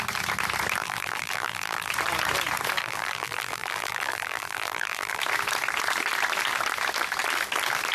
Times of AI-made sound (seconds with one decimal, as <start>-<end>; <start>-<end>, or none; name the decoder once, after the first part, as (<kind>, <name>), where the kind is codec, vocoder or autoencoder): 0.8-1.9 (vocoder, BigVGAN v2); 2.8-5.2